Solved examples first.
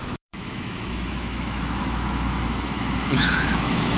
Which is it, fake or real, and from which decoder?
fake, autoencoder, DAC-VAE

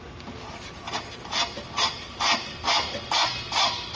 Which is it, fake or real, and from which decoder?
real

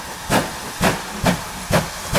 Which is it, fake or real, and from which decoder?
real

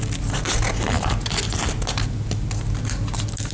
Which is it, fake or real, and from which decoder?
real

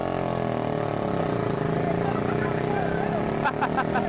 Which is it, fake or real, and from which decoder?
real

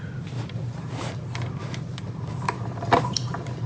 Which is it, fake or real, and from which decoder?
real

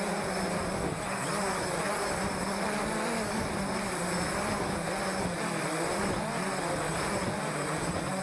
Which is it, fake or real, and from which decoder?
real